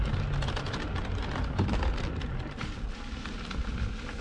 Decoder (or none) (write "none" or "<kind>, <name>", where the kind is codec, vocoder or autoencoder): none